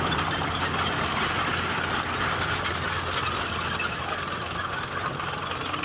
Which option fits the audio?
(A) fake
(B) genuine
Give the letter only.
B